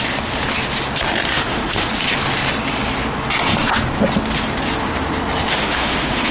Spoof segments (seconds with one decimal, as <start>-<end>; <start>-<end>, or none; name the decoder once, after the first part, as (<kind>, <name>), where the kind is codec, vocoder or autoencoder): 1.3-1.9 (autoencoder, DAC-VAE); 5.5-6.3